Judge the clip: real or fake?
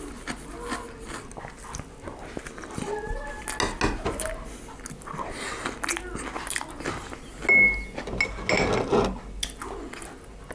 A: real